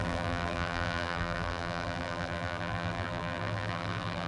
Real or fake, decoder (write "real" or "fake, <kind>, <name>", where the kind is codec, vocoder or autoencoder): fake, vocoder, BigVGAN v2